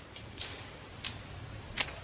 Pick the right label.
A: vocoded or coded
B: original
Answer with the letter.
B